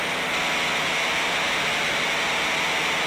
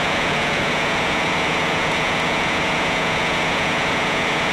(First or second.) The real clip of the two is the first